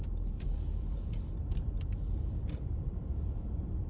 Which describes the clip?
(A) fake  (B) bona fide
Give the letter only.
A